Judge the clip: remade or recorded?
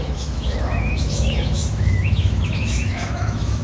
remade